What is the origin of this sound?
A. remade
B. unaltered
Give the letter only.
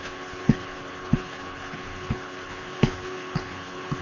A